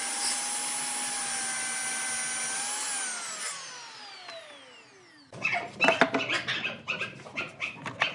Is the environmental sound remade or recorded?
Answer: recorded